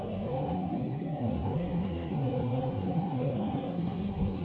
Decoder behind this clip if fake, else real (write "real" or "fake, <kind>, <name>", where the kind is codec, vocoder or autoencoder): fake, codec, SNAC